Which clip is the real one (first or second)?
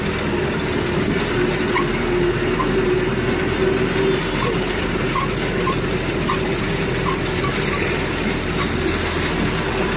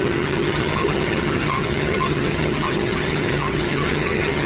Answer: first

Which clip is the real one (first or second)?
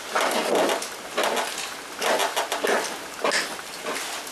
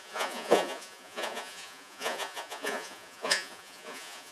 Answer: first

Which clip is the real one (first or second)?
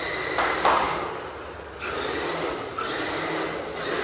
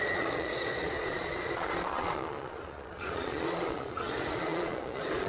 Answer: first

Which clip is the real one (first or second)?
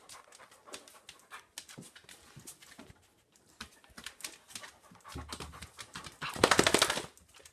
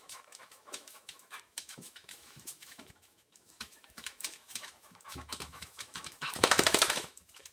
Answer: first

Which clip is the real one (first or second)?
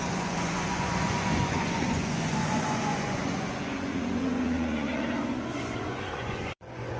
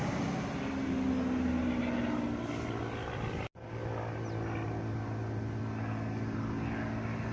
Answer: second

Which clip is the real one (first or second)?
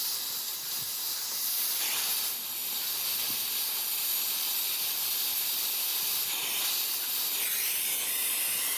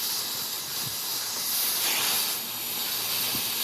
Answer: second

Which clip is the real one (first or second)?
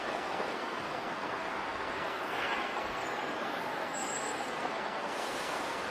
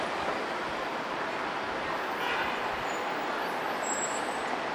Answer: second